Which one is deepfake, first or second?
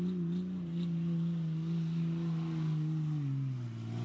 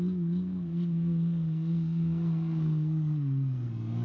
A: second